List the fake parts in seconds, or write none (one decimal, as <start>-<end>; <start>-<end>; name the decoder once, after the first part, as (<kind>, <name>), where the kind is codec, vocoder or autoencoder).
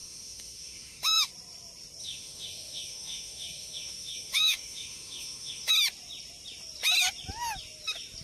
0.0-1.3 (autoencoder, DAC-VAE); 2.0-5.7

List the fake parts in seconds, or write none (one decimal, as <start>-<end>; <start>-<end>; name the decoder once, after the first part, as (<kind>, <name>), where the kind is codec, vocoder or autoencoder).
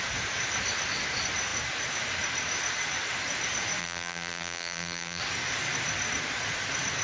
3.8-5.2 (vocoder, BigVGAN v2)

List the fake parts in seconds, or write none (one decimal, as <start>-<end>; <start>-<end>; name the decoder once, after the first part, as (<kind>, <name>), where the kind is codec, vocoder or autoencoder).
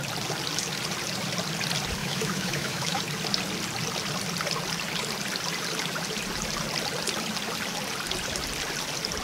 2.0-3.0 (autoencoder, DAC-VAE)